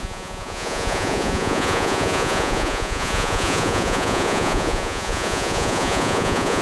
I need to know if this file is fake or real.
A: fake